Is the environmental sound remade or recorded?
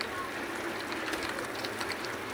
recorded